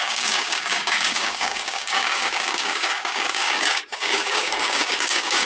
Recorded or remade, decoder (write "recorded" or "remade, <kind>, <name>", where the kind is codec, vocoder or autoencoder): remade, codec, DAC